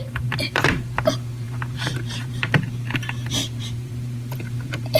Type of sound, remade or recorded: remade